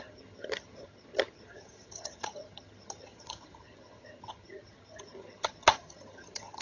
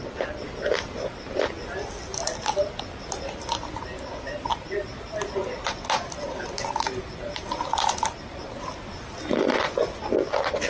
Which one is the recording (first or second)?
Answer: second